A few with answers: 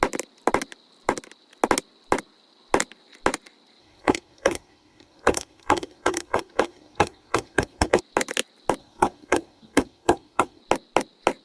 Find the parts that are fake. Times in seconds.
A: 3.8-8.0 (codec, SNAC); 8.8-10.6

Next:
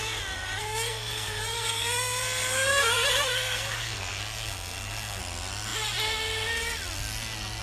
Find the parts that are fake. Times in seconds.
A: 0.6-5.2 (codec, SNAC)

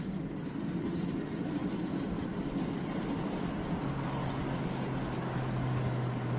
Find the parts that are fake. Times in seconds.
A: none

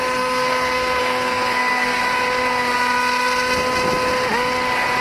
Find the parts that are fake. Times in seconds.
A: 0.0-2.0 (codec, SNAC)